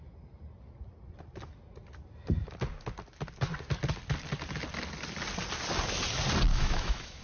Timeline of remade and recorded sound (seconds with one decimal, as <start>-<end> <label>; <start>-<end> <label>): 0.0-6.5 recorded; 6.5-7.2 remade